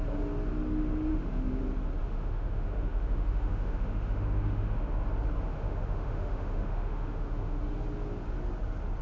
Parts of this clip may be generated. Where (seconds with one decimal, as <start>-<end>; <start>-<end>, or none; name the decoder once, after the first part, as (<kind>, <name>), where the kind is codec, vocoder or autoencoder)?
1.1-1.6 (autoencoder, DAC-VAE); 2.0-4.9; 5.5-7.6